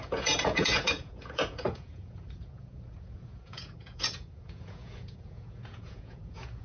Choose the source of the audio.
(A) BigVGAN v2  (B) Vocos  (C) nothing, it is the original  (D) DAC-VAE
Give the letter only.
B